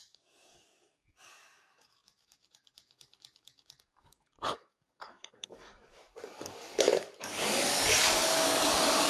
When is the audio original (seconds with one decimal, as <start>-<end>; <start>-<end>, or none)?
none